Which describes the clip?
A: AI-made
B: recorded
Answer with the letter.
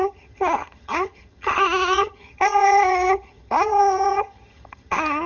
A